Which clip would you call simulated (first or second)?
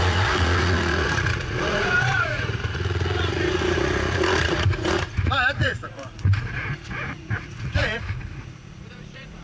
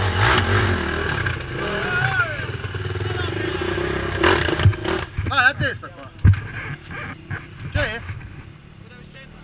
first